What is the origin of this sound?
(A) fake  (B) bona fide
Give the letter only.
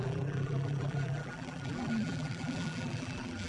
A